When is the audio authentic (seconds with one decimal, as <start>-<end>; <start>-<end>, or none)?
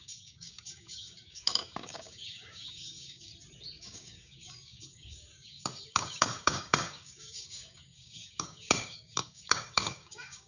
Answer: 3.3-3.8